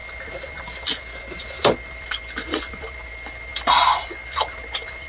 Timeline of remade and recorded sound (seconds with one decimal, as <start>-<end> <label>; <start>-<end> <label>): 0.0-3.5 remade; 3.5-4.2 recorded; 4.2-5.1 remade